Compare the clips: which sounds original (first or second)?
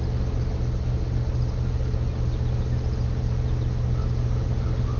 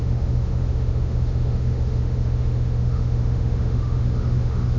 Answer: first